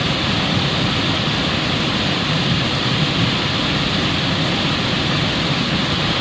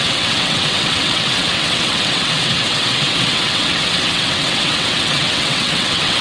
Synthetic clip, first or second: second